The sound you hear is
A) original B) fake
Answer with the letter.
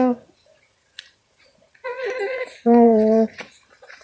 B